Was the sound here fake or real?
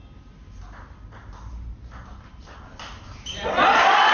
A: real